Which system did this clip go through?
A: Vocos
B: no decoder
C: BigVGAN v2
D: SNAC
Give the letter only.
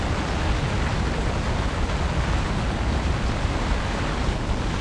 B